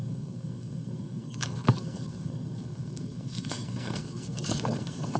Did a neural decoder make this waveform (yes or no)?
yes